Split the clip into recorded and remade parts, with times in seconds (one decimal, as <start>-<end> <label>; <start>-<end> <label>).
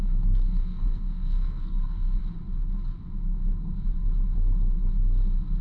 0.0-2.2 remade; 2.2-5.6 recorded